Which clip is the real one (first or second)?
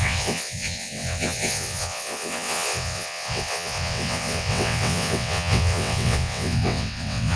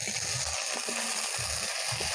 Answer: second